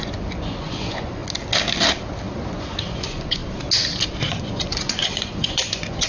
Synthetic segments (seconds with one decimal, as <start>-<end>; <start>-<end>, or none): 0.0-1.2; 2.4-3.4; 4.2-6.1